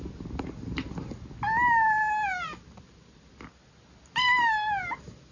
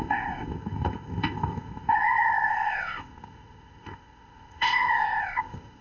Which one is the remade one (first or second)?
second